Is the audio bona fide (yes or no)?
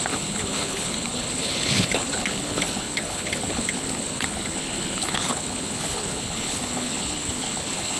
no